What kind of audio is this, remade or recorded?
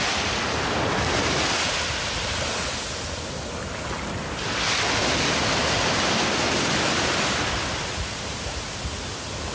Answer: recorded